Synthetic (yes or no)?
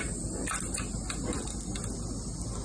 no